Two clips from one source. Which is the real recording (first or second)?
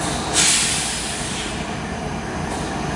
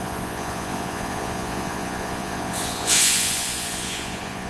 first